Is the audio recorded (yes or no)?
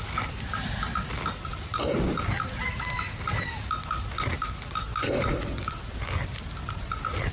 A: yes